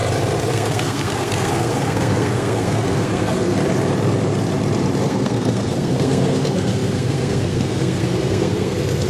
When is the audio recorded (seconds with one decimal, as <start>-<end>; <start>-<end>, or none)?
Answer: 0.0-0.5; 3.6-5.0